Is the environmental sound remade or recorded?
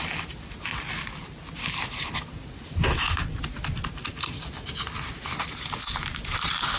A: recorded